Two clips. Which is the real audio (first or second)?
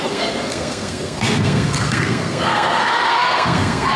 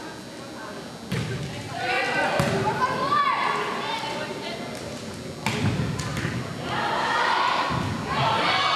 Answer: second